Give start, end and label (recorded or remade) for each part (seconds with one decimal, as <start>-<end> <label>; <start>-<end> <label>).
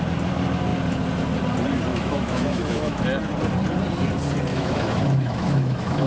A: 0.0-1.9 recorded; 1.9-3.0 remade; 3.0-4.5 recorded; 4.5-6.1 remade